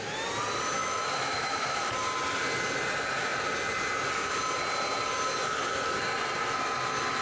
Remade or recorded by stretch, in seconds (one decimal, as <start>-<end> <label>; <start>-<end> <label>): 0.0-0.8 recorded; 0.8-1.9 remade; 1.9-7.2 recorded